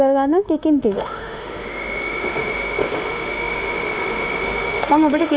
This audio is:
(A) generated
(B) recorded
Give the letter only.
A